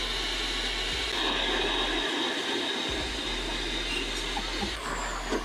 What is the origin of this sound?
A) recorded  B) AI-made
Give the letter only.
A